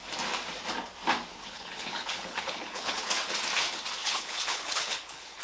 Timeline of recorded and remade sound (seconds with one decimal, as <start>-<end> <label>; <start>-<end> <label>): 0.0-1.3 recorded; 1.3-3.1 remade; 3.1-4.0 recorded; 4.0-5.4 remade